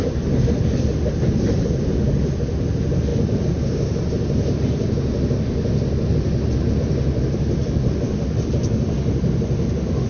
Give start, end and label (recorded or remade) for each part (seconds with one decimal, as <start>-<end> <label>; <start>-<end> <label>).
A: 0.0-3.1 remade; 3.1-6.8 recorded; 6.8-10.1 remade